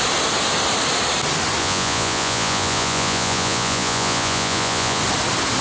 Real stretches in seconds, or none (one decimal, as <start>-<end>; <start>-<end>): 0.0-1.6; 5.0-5.6